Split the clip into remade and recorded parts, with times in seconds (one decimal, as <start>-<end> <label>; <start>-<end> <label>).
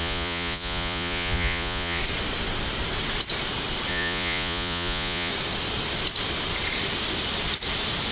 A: 0.0-2.0 remade; 2.0-3.9 recorded; 3.9-5.3 remade; 5.3-8.1 recorded